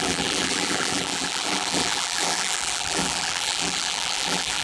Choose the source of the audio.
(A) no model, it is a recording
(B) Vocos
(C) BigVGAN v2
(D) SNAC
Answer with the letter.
C